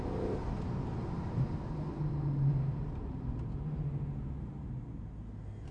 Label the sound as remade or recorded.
remade